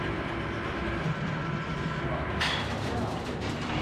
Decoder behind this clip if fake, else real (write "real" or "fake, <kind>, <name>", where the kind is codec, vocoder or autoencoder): real